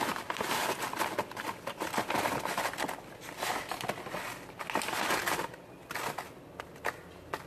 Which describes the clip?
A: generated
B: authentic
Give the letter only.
B